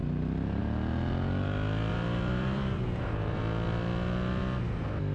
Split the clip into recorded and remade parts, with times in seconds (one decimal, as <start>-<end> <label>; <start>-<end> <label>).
0.0-1.9 recorded; 1.9-3.4 remade; 3.4-5.1 recorded

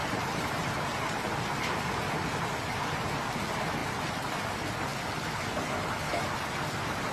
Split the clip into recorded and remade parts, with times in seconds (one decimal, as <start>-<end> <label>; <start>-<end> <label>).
0.0-1.3 remade; 1.3-7.1 recorded

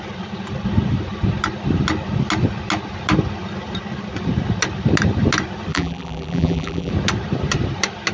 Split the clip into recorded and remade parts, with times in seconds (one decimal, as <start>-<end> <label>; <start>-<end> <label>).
0.0-5.7 recorded; 5.7-6.9 remade; 6.9-8.1 recorded